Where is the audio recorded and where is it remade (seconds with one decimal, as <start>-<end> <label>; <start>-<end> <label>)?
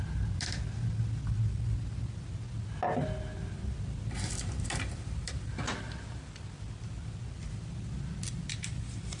0.0-3.3 recorded; 3.3-5.3 remade; 5.3-9.2 recorded